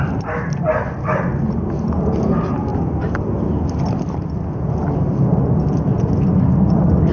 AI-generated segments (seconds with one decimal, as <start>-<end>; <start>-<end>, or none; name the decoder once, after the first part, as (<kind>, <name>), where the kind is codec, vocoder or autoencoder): none